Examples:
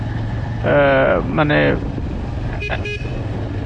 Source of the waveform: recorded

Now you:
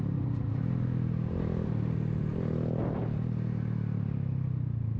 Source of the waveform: recorded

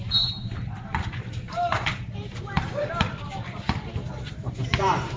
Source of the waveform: remade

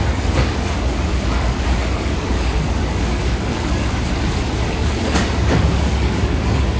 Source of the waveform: remade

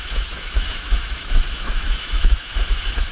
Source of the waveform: remade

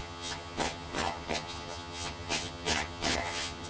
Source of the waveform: remade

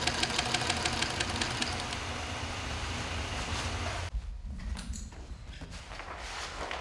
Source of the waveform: recorded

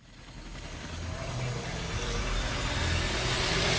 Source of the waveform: recorded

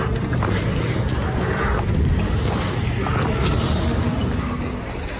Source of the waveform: recorded